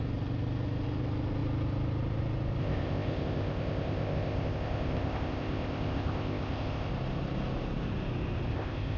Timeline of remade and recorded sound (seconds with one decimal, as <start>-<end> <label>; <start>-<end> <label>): 0.0-2.6 recorded; 2.6-6.9 remade; 6.9-8.5 recorded; 8.5-9.0 remade